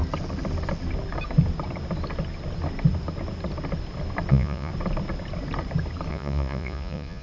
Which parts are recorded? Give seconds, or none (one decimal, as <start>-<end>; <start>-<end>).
0.0-4.3; 4.7-6.1